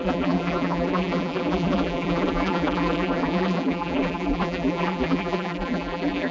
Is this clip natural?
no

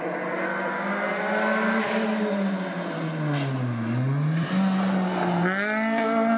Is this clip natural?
yes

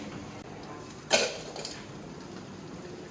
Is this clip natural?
yes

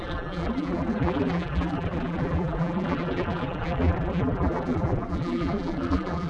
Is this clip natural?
no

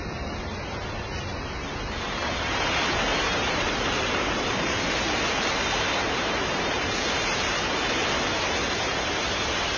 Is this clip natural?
no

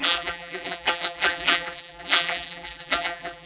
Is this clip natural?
no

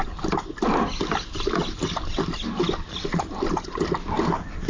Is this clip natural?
yes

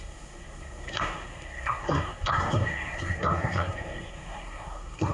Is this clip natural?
no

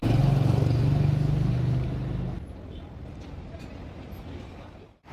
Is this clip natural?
yes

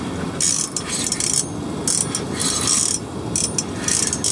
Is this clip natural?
yes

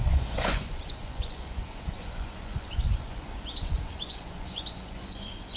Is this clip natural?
no